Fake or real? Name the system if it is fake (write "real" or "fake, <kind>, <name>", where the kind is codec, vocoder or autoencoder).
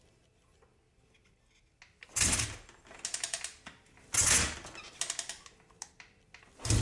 real